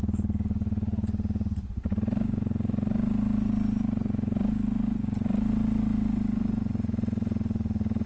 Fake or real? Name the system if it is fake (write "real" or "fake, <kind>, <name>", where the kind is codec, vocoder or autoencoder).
real